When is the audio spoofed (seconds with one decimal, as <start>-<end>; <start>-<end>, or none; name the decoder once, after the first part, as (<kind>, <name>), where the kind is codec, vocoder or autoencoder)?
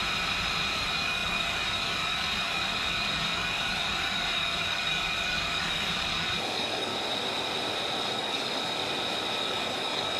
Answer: 0.7-6.9 (codec, DAC); 8.0-8.8; 9.4-10.2